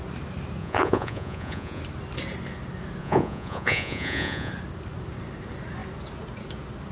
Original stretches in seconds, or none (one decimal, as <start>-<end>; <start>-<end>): 0.0-0.6; 1.8-3.0; 4.5-6.9